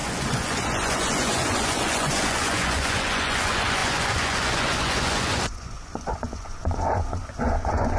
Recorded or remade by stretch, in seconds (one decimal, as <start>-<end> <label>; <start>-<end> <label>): 0.0-8.0 remade